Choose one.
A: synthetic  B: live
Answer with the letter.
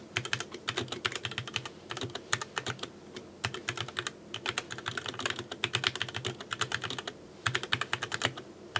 B